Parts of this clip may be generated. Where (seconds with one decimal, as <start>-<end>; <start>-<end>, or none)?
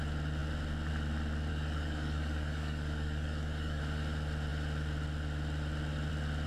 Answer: 1.5-3.8